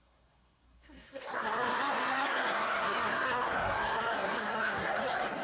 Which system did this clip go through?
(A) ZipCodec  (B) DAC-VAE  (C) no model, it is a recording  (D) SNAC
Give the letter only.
D